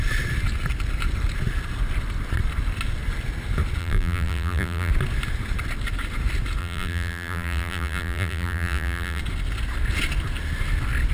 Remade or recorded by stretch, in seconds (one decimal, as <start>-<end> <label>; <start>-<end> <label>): 0.0-3.8 recorded; 3.8-4.9 remade; 4.9-6.6 recorded; 6.6-9.2 remade; 9.2-11.1 recorded

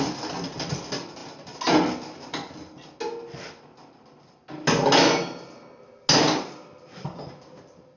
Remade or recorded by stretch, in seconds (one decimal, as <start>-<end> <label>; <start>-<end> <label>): 0.0-8.0 recorded